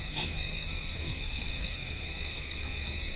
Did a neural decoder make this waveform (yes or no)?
yes